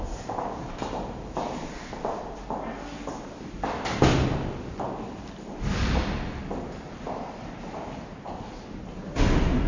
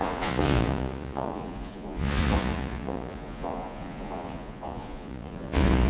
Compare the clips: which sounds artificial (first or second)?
second